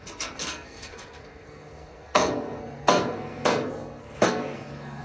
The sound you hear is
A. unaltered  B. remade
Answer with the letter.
B